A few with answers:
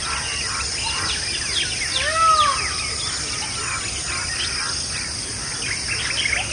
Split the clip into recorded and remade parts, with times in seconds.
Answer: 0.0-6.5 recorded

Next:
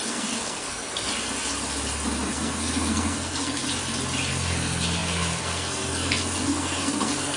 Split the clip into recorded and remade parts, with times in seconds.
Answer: 0.0-1.1 remade; 1.1-2.3 recorded; 2.3-3.6 remade; 3.6-4.3 recorded; 4.3-7.4 remade